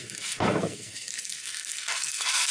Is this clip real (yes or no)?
no